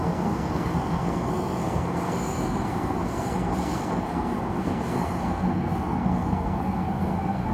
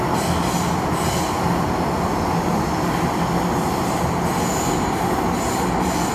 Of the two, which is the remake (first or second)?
first